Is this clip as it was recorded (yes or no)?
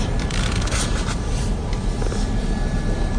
yes